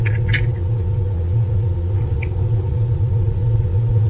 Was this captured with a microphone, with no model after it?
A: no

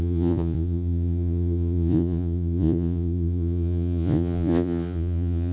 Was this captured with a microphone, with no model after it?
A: no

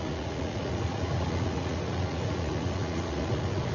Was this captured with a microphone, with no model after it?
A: no